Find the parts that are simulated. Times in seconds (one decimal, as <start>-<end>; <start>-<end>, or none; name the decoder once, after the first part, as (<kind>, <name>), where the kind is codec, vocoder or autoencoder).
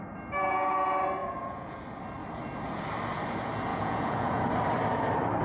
1.2-1.8 (vocoder, Vocos); 3.7-4.4